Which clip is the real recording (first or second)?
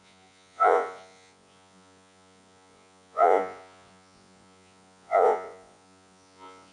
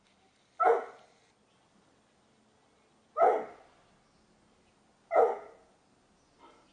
second